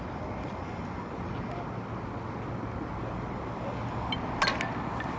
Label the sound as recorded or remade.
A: recorded